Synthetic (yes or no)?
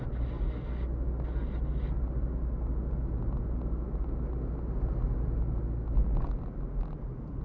no